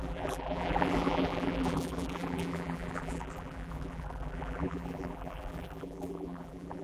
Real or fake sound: fake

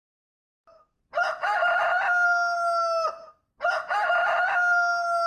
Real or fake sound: real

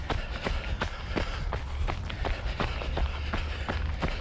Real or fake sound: real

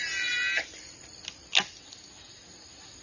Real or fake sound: real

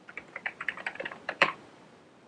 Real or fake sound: fake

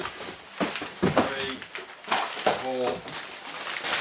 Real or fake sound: fake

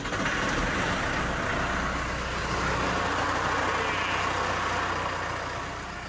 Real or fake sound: real